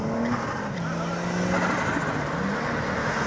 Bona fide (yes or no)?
yes